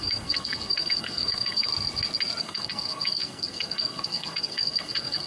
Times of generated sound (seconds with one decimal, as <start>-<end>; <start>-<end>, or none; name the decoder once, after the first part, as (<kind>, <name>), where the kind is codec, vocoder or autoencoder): 0.0-1.7 (codec, SNAC); 2.4-5.3